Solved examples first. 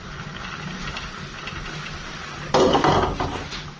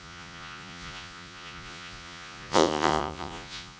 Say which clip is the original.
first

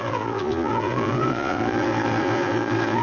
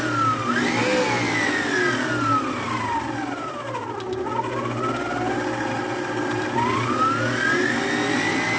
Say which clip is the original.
second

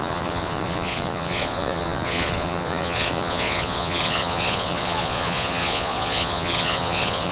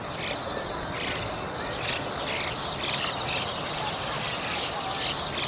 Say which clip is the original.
second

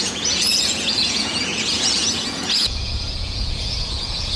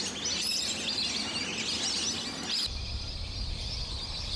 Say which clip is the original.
second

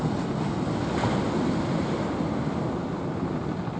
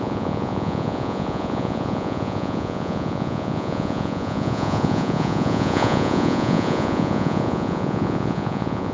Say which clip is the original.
first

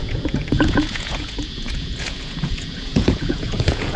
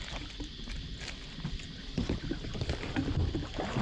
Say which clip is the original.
second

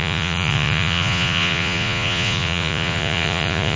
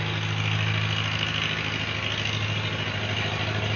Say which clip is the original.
second